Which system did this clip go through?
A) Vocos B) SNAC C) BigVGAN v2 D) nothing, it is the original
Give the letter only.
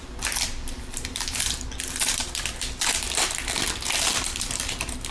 C